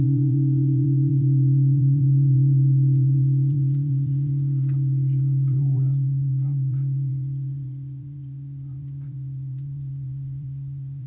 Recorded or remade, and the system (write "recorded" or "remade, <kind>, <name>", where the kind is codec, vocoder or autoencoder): remade, vocoder, BigVGAN v2